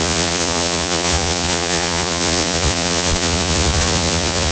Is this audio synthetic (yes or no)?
yes